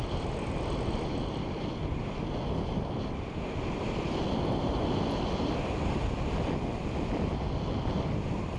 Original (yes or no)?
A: yes